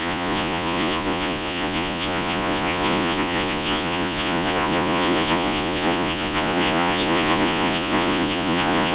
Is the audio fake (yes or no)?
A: yes